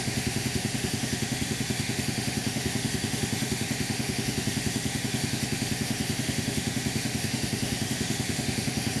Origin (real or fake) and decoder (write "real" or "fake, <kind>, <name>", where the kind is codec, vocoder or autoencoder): fake, autoencoder, DAC-VAE